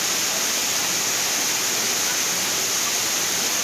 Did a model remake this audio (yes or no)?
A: no